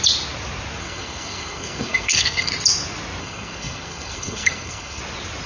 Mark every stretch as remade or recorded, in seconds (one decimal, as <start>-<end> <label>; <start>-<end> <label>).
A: 0.0-0.8 recorded; 0.8-2.5 remade; 2.5-3.2 recorded; 3.2-5.0 remade; 5.0-5.5 recorded